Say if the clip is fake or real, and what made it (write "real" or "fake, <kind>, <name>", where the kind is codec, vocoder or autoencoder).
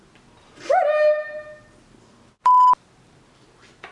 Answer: real